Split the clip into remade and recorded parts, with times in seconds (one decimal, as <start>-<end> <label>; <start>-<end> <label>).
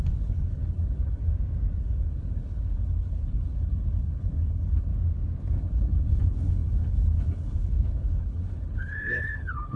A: 0.0-1.2 remade; 1.2-1.8 recorded; 1.8-4.9 remade; 4.9-5.5 recorded; 5.5-9.8 remade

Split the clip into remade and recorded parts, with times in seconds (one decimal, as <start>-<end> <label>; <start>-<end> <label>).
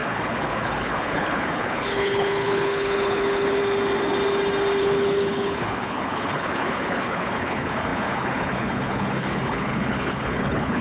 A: 0.0-3.6 remade; 3.6-4.8 recorded; 4.8-10.8 remade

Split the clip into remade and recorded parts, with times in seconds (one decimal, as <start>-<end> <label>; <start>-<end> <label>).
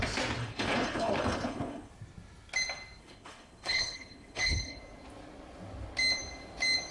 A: 0.0-0.4 recorded; 0.4-1.9 remade; 1.9-3.0 recorded; 3.0-4.8 remade; 4.8-6.9 recorded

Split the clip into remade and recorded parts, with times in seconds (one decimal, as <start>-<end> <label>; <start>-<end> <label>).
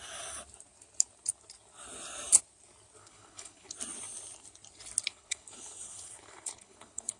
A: 0.0-3.0 recorded; 3.0-3.7 remade; 3.7-5.1 recorded; 5.1-7.2 remade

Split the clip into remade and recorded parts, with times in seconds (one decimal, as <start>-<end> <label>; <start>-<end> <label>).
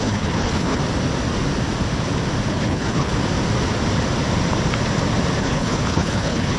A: 0.0-0.8 remade; 0.8-2.5 recorded; 2.5-3.2 remade; 3.2-5.4 recorded; 5.4-6.6 remade